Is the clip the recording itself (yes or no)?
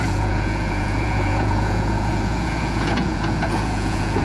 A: no